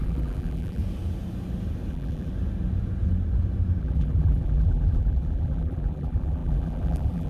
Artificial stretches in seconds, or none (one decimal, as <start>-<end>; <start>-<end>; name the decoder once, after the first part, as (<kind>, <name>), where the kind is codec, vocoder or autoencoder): 0.0-0.8 (vocoder, BigVGAN v2); 1.9-2.3; 3.8-7.3